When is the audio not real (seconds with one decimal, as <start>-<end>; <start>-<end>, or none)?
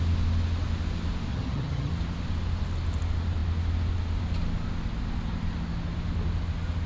1.3-1.9